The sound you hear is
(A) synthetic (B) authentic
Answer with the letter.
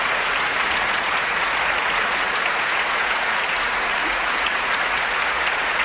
A